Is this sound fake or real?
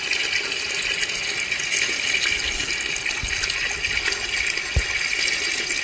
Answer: real